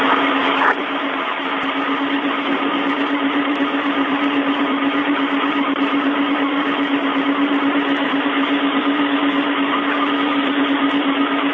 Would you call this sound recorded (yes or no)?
no